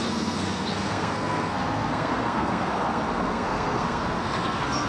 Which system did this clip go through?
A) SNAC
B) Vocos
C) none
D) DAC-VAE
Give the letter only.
A